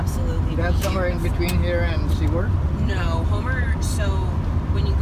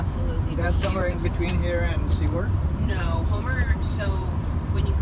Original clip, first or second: first